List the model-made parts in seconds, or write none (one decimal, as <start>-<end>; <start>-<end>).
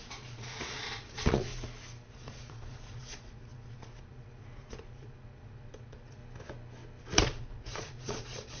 0.0-1.5; 2.1-6.2; 7.0-8.6